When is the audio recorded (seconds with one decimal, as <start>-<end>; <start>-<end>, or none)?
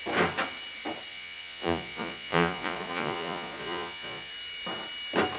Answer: 0.0-1.1; 4.3-5.4